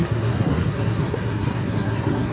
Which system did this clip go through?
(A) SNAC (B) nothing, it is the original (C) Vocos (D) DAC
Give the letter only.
A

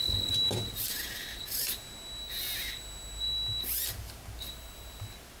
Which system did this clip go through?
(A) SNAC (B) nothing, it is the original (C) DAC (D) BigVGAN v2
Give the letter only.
B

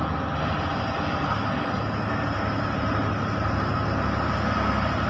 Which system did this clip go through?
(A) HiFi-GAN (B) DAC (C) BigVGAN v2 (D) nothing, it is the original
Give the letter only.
D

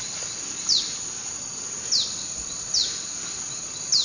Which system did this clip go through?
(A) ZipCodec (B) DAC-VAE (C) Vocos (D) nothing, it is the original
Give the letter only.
D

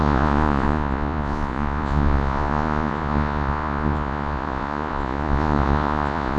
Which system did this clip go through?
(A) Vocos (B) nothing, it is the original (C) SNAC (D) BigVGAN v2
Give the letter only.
A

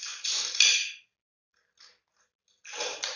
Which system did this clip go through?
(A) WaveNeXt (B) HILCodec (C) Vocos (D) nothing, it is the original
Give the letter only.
D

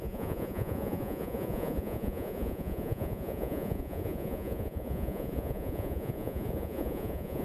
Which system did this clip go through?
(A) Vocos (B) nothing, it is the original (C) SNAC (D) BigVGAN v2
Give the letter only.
A